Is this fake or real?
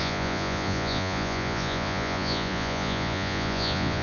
fake